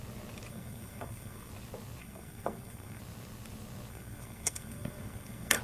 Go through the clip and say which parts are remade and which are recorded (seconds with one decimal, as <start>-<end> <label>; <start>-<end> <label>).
0.0-0.5 recorded; 0.5-1.5 remade; 1.5-2.0 recorded; 2.0-3.0 remade; 3.0-3.9 recorded; 3.9-5.6 remade